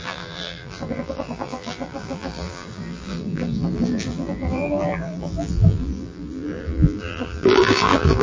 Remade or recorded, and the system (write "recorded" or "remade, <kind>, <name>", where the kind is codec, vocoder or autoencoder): remade, vocoder, BigVGAN v2